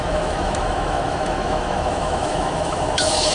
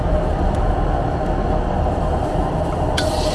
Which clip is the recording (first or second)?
second